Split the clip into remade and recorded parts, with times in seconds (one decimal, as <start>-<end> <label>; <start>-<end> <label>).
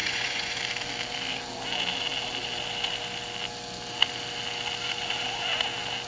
0.0-0.6 remade; 0.6-6.1 recorded